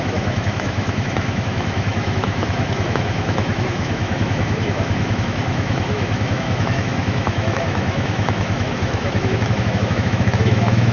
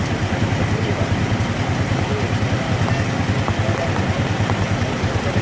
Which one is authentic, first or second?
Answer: second